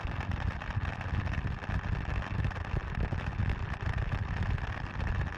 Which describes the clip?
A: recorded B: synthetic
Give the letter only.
A